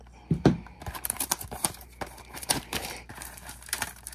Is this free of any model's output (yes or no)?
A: no